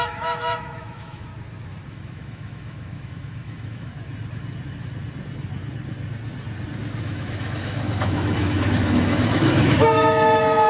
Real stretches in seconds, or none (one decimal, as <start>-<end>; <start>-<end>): 1.3-1.9; 3.9-7.0